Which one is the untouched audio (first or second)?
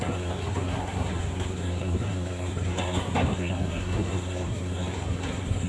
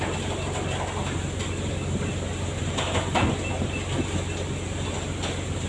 second